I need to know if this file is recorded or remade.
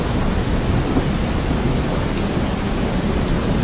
recorded